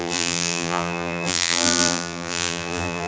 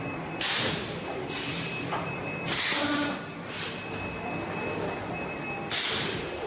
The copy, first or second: first